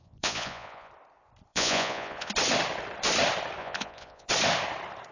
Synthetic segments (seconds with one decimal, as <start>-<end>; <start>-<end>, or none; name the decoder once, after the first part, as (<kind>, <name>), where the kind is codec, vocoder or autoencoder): 0.0-0.9 (vocoder, Vocos); 1.5-2.3; 3.6-4.3